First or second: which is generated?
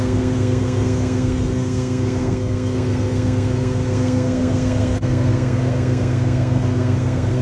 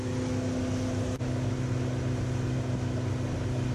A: first